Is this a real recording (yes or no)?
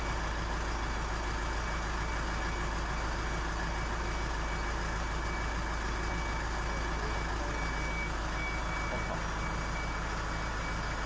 yes